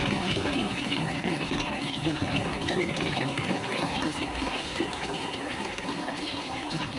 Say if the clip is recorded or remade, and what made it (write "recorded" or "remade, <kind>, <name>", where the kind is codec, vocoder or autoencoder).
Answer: remade, codec, SNAC